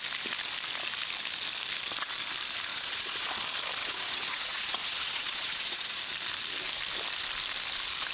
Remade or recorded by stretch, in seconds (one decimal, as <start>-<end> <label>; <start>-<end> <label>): 0.0-2.7 recorded; 2.7-3.3 remade; 3.3-3.8 recorded; 3.8-6.0 remade; 6.0-8.1 recorded